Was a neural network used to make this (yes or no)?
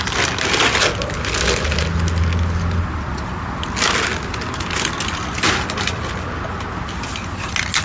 no